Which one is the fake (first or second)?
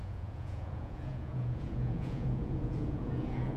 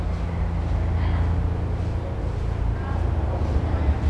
first